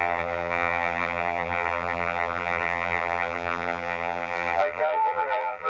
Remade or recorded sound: remade